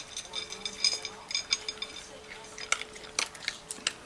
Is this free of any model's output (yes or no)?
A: yes